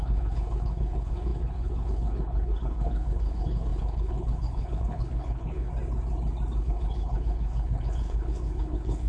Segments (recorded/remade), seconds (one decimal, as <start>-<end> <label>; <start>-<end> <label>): 0.0-5.7 remade; 5.7-6.6 recorded; 6.6-9.1 remade